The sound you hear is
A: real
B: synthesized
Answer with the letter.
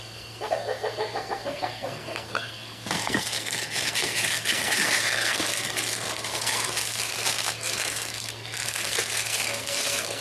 B